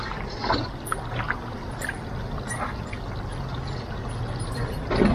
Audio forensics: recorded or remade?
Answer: recorded